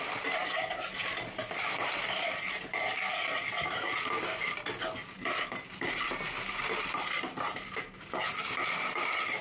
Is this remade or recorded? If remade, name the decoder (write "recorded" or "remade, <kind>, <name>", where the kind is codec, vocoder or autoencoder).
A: recorded